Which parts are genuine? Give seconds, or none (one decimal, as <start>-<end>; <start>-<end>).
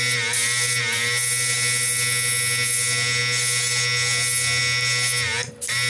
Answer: 0.0-5.9